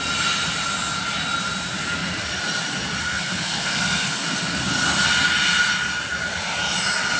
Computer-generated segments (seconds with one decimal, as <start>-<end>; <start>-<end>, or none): 3.0-4.6